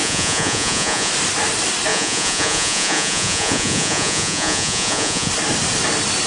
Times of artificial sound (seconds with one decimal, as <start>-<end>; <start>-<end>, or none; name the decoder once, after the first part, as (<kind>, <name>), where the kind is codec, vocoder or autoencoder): 0.0-1.1 (vocoder, Vocos); 1.9-5.3